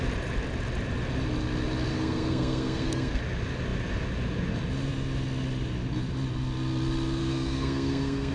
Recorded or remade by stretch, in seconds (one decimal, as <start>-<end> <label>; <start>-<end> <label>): 0.0-1.9 recorded; 1.9-3.2 remade; 3.2-7.2 recorded; 7.2-8.3 remade